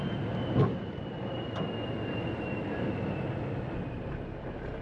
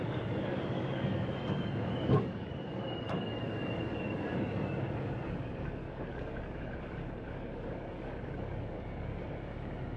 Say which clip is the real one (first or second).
first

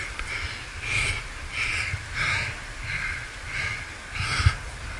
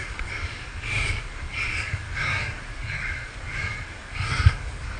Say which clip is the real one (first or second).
first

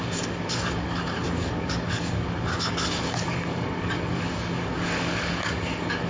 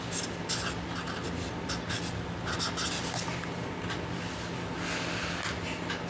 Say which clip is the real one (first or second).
second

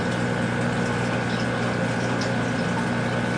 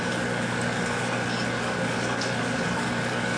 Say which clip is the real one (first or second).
first